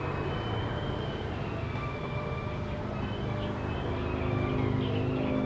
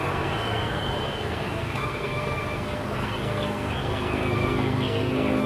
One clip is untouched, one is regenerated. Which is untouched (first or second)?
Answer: first